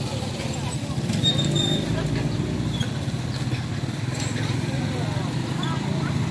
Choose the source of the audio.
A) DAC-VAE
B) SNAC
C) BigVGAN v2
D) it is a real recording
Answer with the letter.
D